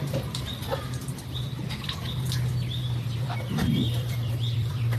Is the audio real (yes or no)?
no